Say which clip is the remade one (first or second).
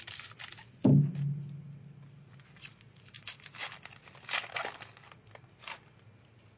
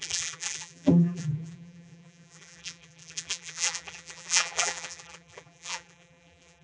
second